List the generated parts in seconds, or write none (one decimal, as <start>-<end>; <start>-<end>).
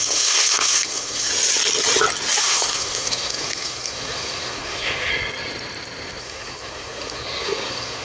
0.0-1.3; 2.4-5.1; 6.2-8.0